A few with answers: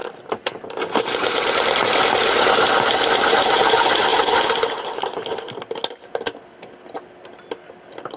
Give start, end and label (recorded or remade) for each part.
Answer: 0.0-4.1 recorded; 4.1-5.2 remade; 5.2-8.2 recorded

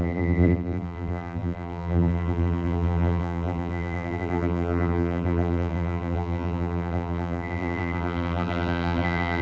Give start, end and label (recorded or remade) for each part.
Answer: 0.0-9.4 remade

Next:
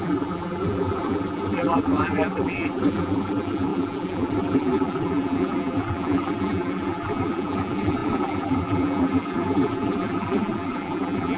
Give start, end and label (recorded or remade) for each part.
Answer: 0.0-11.4 remade

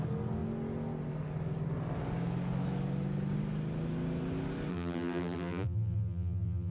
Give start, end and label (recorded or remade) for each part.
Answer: 0.0-4.7 recorded; 4.7-6.7 remade

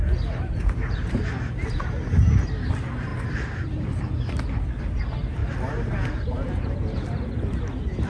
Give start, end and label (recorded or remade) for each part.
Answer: 0.0-0.6 remade; 0.6-8.1 recorded

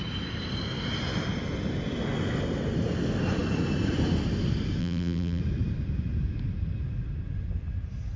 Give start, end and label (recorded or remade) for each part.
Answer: 0.0-4.8 recorded; 4.8-5.4 remade; 5.4-8.2 recorded

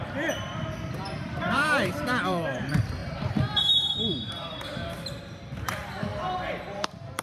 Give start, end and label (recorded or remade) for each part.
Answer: 0.0-0.5 remade; 0.5-1.3 recorded; 1.3-3.0 remade; 3.0-3.6 recorded; 3.6-6.1 remade; 6.1-6.6 recorded; 6.6-7.2 remade

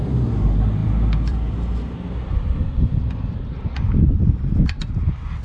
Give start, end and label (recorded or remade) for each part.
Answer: 0.0-0.8 recorded; 0.8-4.0 remade; 4.0-5.4 recorded